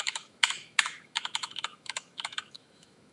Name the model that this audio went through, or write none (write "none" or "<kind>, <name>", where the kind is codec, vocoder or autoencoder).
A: autoencoder, DAC-VAE